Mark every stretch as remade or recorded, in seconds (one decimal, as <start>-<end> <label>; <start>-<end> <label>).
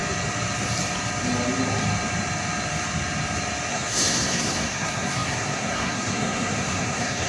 0.0-3.7 recorded; 3.7-7.3 remade